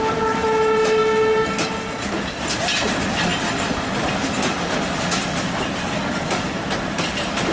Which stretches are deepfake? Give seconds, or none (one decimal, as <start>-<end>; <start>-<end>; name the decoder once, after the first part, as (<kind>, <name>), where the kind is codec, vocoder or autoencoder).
none